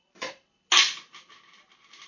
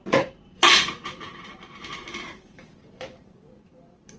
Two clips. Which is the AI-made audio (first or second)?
second